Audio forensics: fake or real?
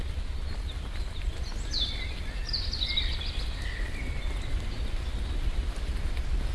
real